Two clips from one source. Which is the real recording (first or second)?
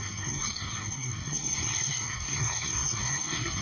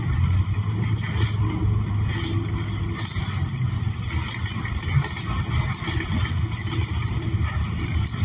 second